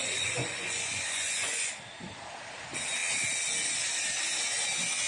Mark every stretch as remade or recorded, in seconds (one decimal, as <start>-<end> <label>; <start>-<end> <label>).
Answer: 0.0-1.7 remade; 1.7-5.1 recorded